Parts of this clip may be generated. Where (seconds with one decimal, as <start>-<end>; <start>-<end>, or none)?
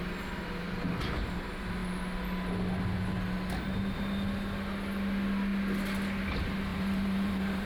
6.7-7.7